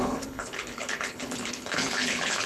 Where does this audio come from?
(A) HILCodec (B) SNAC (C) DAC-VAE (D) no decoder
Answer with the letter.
A